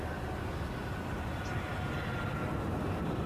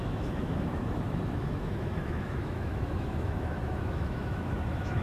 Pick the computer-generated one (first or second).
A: second